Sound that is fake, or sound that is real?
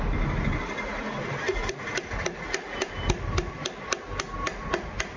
real